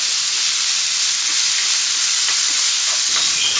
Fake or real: real